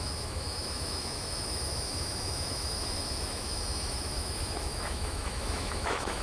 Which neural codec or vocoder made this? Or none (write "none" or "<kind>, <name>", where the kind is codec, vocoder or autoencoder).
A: autoencoder, DAC-VAE